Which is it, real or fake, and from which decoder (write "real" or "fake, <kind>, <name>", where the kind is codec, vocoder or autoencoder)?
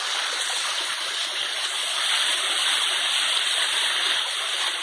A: real